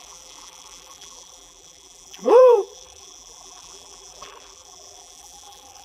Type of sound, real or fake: fake